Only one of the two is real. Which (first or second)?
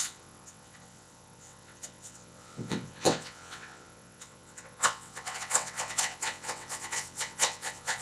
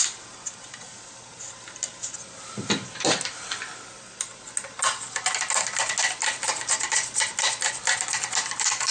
second